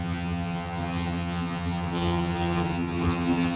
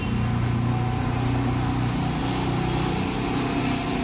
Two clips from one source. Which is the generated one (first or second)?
first